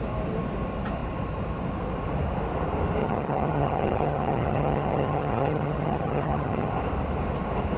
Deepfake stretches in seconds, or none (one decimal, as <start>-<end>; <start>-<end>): 3.0-6.7